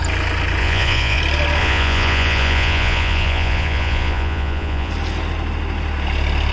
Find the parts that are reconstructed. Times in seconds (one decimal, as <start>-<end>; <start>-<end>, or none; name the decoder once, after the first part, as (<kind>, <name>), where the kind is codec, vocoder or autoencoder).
0.6-1.2 (vocoder, Vocos); 1.6-4.9